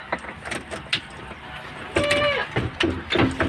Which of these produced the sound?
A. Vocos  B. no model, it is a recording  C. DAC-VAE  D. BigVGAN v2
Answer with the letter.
B